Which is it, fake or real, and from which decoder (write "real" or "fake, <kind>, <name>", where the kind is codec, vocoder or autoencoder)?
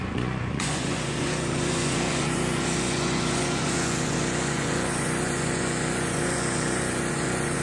fake, vocoder, Vocos